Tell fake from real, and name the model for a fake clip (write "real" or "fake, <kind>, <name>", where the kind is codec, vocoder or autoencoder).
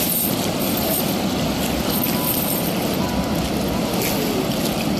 real